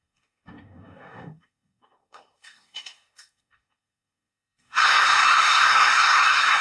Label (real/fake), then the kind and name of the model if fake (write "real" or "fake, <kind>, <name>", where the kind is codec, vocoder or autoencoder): fake, codec, SNAC